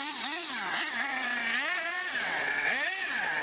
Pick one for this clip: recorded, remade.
remade